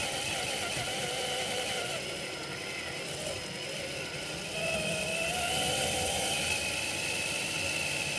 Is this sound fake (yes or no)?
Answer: no